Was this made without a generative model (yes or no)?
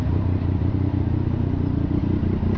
yes